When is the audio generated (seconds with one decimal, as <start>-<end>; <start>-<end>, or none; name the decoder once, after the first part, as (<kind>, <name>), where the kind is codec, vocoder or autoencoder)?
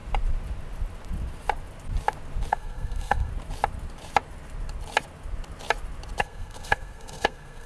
2.5-3.3 (codec, SNAC); 6.2-7.7